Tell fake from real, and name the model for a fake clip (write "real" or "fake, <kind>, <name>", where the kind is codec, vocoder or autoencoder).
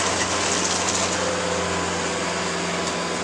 real